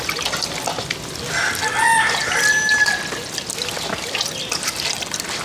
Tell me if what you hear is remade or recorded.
recorded